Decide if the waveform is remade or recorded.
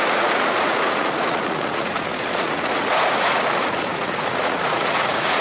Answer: remade